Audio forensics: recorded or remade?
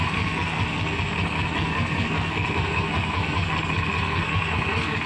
remade